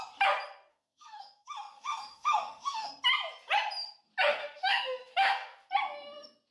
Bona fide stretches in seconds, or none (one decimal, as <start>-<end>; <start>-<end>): 0.0-0.7; 2.9-4.4; 5.7-6.5